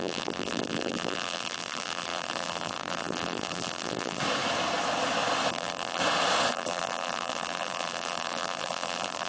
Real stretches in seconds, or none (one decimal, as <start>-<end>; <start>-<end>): 4.2-5.5; 6.0-6.5